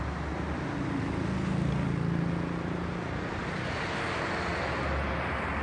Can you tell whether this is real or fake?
real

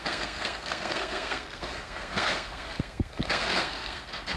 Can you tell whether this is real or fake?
fake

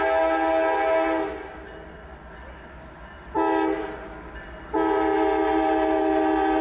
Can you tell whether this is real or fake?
real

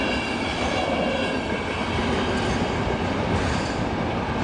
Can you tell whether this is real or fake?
real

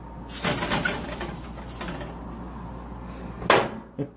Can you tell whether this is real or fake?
real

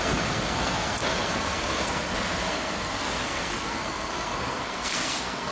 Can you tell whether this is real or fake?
fake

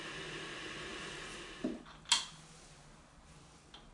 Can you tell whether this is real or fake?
real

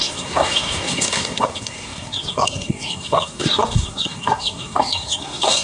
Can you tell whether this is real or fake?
fake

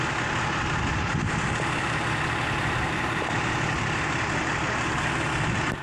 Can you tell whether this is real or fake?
real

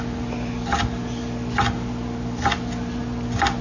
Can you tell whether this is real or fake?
real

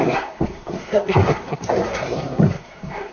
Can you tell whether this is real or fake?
fake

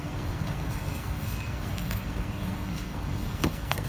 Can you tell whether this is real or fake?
fake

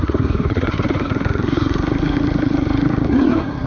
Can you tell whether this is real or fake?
fake